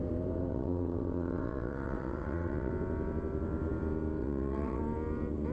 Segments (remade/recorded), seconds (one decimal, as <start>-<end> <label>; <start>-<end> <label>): 0.0-0.5 recorded; 0.5-2.7 remade; 2.7-4.2 recorded; 4.2-4.8 remade; 4.8-5.5 recorded

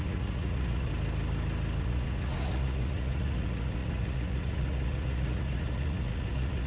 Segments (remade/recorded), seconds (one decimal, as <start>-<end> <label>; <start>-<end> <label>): 0.0-0.9 remade; 0.9-1.8 recorded; 1.8-6.7 remade

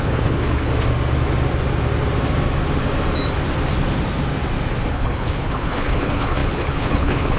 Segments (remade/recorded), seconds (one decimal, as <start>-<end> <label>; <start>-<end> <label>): 0.0-0.7 remade; 0.7-4.9 recorded; 4.9-7.4 remade